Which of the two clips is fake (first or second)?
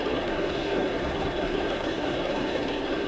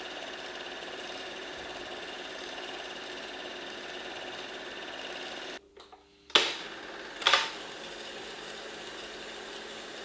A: first